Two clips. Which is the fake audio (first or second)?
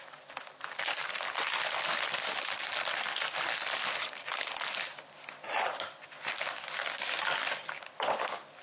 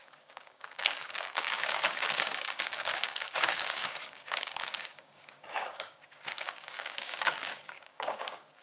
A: second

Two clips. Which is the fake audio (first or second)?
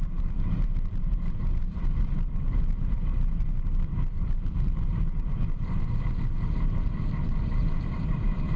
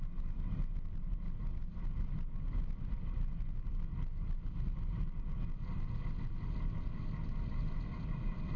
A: first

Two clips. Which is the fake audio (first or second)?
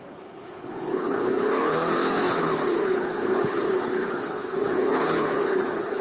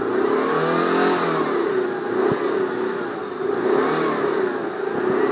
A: first